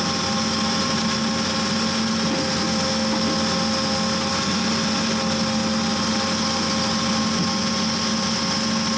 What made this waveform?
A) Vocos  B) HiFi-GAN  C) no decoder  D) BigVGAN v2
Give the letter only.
C